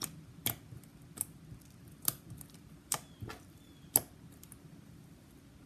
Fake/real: real